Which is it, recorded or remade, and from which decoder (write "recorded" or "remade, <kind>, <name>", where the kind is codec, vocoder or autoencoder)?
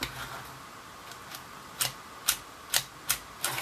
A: recorded